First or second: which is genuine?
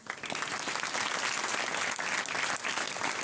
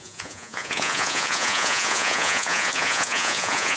first